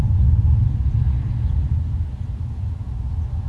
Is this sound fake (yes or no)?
no